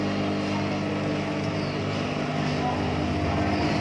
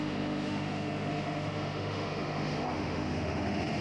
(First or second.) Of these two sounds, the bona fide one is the first